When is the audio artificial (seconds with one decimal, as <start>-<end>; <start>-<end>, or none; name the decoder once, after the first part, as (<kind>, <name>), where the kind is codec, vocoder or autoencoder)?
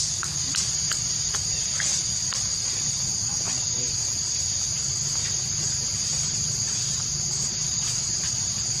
5.9-7.7 (vocoder, BigVGAN v2)